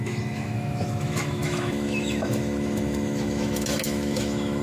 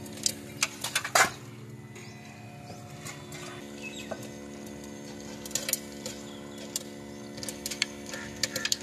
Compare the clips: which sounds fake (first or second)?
first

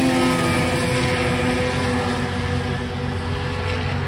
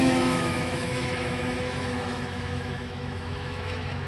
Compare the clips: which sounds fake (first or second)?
second